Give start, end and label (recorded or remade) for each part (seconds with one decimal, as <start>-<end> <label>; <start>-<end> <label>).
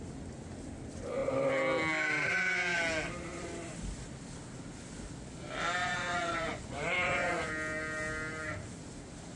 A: 0.0-5.8 recorded; 5.8-7.5 remade; 7.5-9.4 recorded